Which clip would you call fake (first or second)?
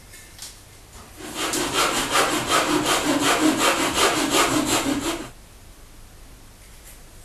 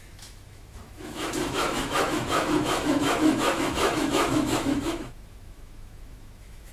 second